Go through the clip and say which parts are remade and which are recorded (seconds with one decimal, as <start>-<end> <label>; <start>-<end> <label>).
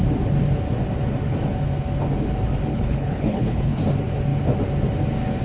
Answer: 0.0-2.7 recorded; 2.7-3.8 remade; 3.8-5.4 recorded